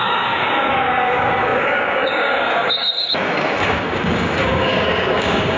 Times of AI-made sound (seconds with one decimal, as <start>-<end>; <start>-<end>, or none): 0.0-5.6